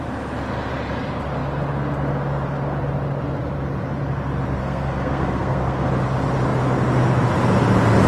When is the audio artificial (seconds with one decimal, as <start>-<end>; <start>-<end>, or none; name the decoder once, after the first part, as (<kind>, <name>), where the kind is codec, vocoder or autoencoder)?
4.6-5.9 (codec, SNAC)